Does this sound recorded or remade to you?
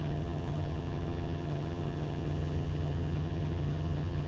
remade